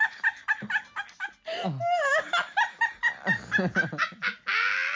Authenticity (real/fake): real